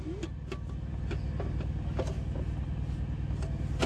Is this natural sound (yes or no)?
yes